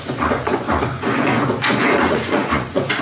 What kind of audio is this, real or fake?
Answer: fake